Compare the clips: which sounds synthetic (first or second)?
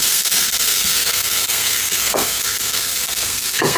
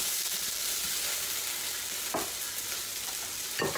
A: first